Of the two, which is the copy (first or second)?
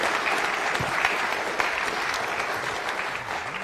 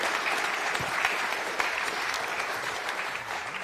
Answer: second